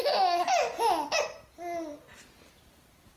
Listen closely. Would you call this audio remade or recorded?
recorded